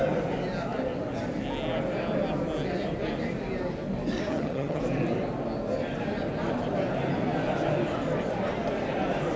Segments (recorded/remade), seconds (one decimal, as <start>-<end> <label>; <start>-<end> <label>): 0.0-4.3 recorded; 4.3-4.8 remade; 4.8-9.4 recorded